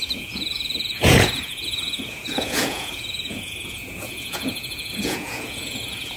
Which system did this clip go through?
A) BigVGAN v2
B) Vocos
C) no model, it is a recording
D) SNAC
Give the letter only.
B